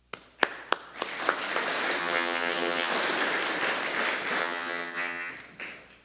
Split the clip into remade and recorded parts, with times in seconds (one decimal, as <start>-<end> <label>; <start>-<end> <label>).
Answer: 0.0-2.0 recorded; 2.0-2.9 remade; 2.9-4.4 recorded; 4.4-5.3 remade; 5.3-6.0 recorded